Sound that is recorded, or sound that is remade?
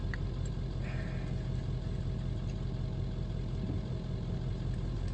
recorded